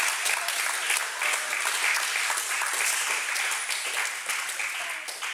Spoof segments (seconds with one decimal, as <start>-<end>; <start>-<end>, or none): none